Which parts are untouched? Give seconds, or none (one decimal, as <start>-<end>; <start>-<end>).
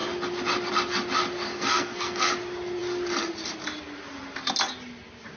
0.0-1.5; 2.3-5.4